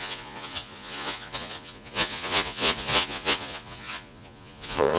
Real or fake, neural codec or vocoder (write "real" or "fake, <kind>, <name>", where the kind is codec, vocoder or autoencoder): fake, vocoder, Vocos